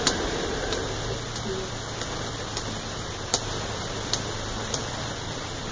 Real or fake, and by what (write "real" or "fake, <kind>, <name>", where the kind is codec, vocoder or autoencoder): real